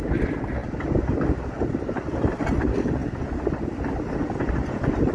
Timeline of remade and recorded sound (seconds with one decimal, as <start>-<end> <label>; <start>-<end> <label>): 0.0-5.1 recorded